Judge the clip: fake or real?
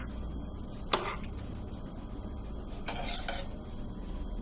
real